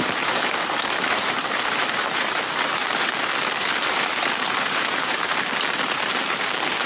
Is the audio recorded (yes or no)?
no